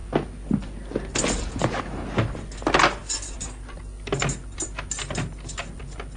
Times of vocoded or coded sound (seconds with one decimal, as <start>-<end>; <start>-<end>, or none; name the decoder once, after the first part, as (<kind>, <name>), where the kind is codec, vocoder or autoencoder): none